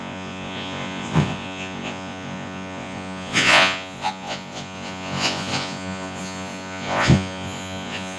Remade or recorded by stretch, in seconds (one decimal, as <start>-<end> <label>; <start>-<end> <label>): 0.0-8.2 remade